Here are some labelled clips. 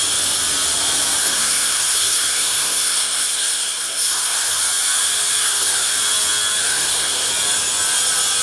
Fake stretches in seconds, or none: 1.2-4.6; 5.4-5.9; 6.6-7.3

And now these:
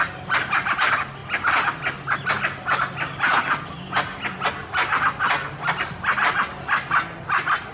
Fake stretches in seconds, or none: none

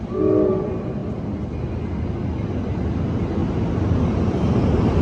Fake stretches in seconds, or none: 3.4-4.4

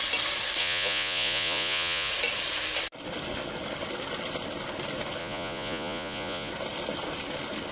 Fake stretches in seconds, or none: 0.6-2.1; 5.2-6.5

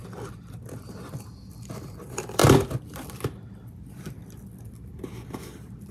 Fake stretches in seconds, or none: 0.0-2.4

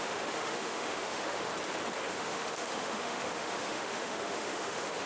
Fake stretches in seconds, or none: 0.0-1.5; 2.1-5.1

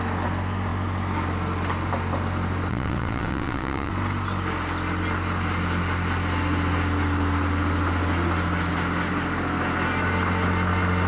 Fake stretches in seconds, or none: 2.7-3.9